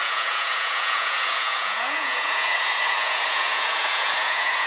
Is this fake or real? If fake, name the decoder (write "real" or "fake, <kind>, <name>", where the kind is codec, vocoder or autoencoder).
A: fake, vocoder, Vocos